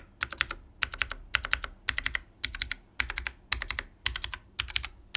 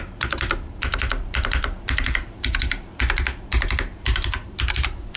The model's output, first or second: second